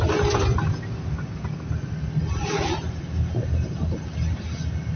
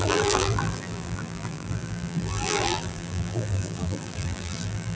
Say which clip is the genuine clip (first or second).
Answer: first